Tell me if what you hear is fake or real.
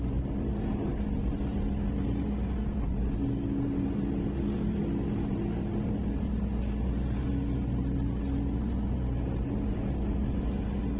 real